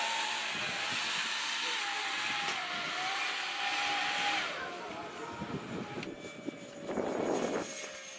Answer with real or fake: real